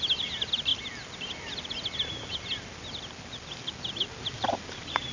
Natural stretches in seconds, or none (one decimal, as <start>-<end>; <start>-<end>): 0.0-5.1